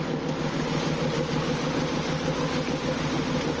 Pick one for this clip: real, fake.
real